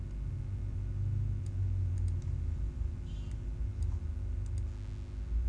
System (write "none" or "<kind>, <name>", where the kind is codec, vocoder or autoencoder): none